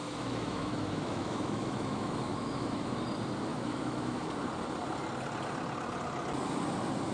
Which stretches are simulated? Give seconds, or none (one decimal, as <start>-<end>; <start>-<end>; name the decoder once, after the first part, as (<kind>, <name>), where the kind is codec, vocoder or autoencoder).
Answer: 0.0-3.0 (autoencoder, DAC-VAE); 3.5-4.3